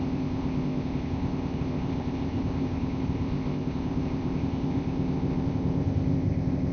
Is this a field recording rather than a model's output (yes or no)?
no